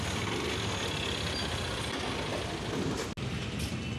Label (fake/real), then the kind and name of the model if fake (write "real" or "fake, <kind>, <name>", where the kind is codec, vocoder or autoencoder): real